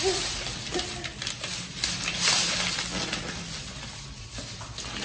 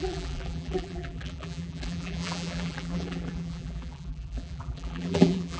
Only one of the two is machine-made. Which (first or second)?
second